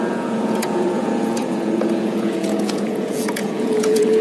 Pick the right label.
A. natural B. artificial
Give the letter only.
B